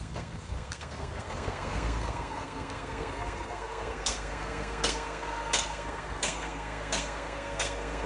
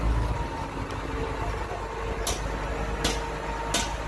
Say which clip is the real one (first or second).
second